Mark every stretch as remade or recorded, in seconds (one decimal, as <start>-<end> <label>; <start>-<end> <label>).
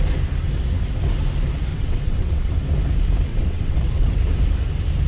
0.0-1.7 recorded; 1.7-2.5 remade; 2.5-3.3 recorded; 3.3-4.1 remade; 4.1-5.1 recorded